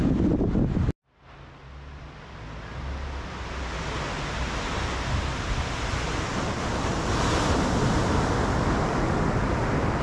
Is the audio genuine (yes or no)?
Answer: yes